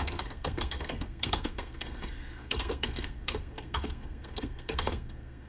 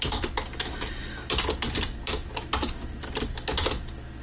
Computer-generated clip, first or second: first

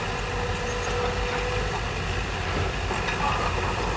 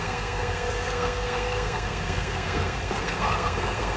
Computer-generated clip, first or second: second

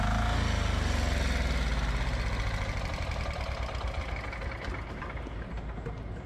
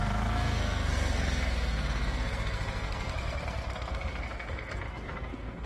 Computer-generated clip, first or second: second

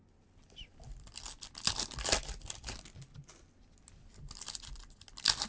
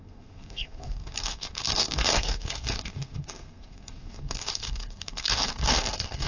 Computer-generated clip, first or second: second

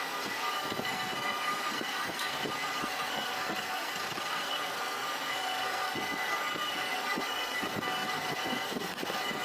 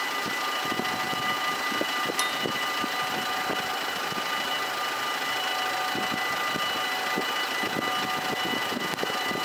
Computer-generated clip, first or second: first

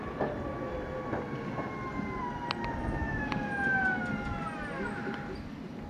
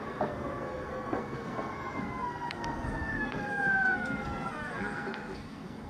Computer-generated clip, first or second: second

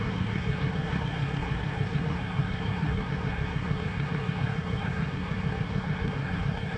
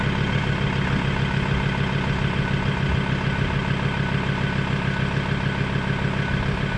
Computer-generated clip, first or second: first